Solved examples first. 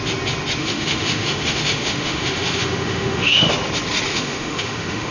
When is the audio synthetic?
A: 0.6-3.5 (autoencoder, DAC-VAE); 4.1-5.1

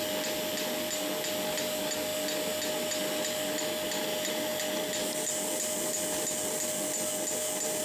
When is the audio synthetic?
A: none

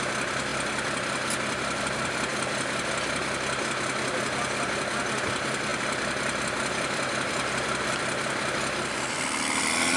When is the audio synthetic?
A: none

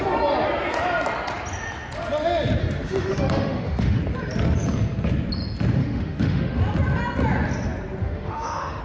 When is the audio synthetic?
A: 2.6-4.0 (autoencoder, DAC-VAE); 5.8-6.6; 8.0-8.8

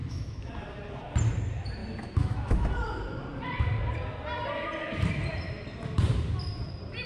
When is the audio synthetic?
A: 0.0-0.5 (autoencoder, DAC-VAE); 1.8-2.7

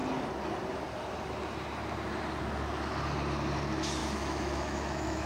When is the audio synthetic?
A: 4.0-5.3 (autoencoder, DAC-VAE)